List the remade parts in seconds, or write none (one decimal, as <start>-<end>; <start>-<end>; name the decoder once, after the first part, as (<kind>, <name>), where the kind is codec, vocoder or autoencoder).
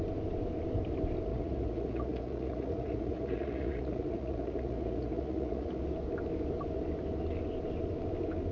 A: 1.3-5.8 (vocoder, Vocos)